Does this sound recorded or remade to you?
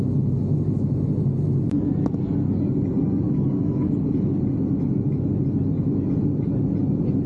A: recorded